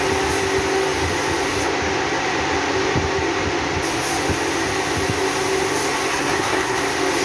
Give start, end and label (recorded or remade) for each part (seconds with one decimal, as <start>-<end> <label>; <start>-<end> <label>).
0.0-6.1 recorded; 6.1-6.8 remade; 6.8-7.2 recorded